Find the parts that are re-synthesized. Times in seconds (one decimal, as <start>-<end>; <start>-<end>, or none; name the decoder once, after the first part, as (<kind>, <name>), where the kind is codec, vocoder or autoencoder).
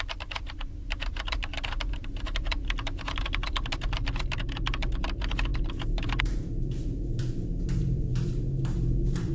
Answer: 0.0-9.3 (vocoder, BigVGAN v2)